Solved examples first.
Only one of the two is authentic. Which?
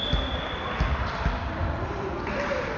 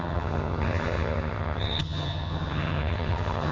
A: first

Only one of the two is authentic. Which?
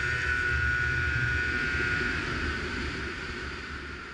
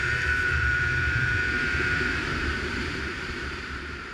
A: first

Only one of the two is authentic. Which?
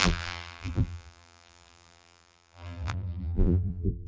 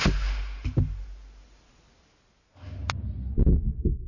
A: second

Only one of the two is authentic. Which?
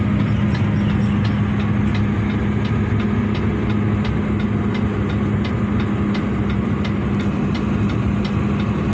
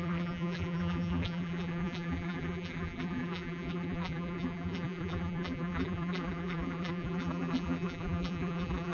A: first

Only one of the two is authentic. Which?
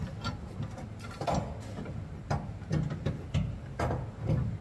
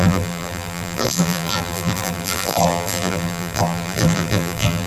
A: first